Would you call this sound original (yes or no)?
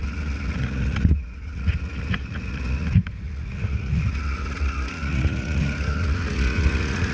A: no